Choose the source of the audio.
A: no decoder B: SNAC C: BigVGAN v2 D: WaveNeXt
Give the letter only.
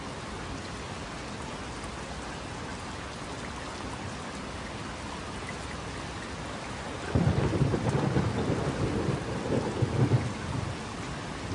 A